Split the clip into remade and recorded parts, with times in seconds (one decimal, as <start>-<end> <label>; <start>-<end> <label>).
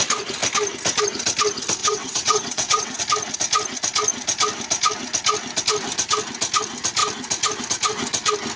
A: 0.0-1.8 recorded; 1.8-3.0 remade; 3.0-8.6 recorded